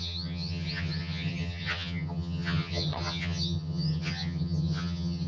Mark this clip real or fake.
fake